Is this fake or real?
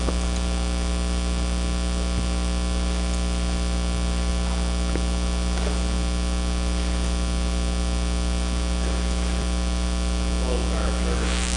real